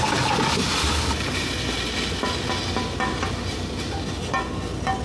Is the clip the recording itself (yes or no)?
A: yes